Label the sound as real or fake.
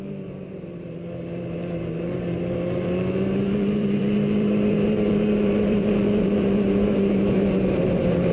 fake